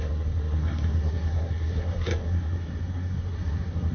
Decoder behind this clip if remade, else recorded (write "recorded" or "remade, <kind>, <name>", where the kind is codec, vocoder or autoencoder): remade, codec, SNAC